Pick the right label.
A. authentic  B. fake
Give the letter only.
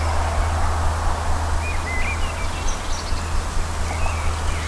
A